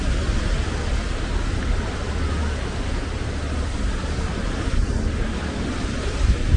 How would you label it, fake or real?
real